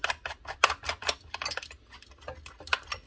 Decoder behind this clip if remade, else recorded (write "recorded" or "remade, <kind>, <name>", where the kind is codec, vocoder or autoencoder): recorded